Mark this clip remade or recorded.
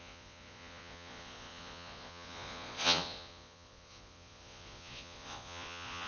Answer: remade